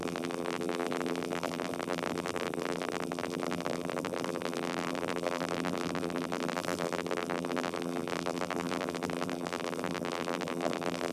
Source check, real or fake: fake